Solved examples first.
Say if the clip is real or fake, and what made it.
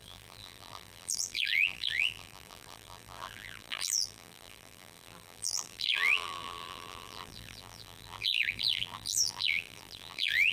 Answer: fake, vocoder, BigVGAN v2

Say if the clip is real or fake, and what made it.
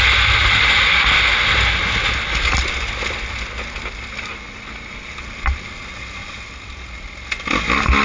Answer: real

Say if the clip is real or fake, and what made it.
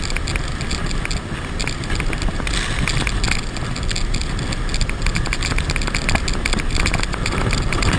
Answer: real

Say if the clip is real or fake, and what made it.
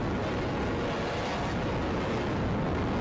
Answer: real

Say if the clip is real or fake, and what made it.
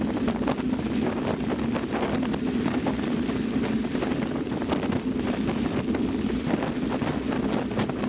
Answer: real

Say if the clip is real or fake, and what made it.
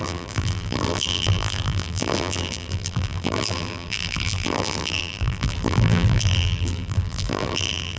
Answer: fake, vocoder, BigVGAN v2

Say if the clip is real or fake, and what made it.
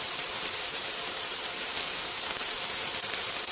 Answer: fake, vocoder, BigVGAN v2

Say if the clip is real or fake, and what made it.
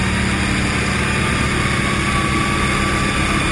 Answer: real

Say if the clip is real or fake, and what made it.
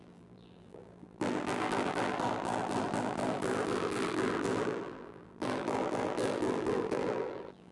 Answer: fake, vocoder, BigVGAN v2